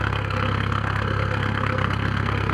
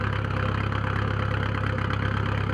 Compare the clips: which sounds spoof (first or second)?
first